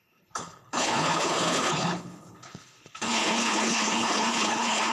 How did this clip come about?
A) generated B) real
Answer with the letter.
A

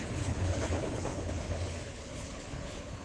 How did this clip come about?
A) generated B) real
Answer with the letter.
A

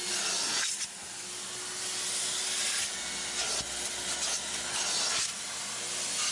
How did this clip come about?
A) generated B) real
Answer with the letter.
B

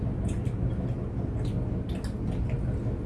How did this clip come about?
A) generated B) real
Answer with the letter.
B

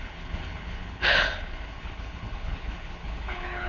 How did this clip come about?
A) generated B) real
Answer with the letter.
A